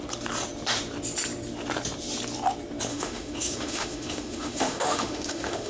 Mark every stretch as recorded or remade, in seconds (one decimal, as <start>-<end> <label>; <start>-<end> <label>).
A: 0.0-2.9 recorded; 2.9-5.7 remade